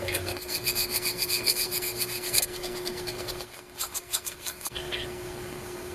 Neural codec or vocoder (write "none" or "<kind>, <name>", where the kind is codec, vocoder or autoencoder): codec, SNAC